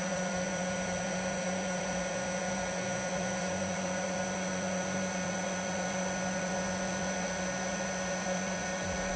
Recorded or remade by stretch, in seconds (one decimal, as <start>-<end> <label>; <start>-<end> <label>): 0.0-9.2 remade

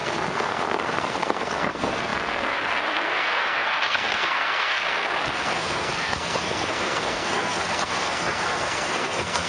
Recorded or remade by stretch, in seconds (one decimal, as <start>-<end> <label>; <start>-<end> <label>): 0.0-9.5 remade

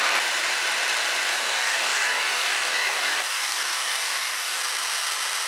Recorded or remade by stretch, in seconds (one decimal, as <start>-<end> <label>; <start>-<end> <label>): 0.0-1.3 recorded; 1.3-4.6 remade; 4.6-5.5 recorded

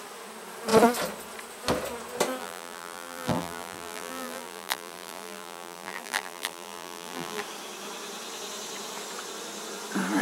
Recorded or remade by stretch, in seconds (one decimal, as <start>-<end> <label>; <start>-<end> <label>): 0.0-2.4 recorded; 2.4-7.4 remade; 7.4-10.2 recorded

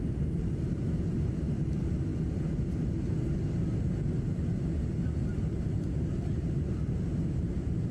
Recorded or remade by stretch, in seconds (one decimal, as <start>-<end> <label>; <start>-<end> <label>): 0.0-7.9 recorded

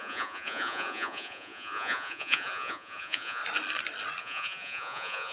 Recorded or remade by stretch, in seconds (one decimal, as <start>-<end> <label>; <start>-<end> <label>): 0.0-3.4 remade; 3.4-4.2 recorded; 4.2-5.3 remade